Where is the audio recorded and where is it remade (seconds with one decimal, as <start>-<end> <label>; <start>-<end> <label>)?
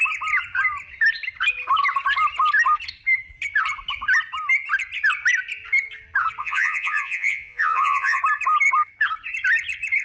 0.0-6.4 recorded; 6.4-8.2 remade; 8.2-10.0 recorded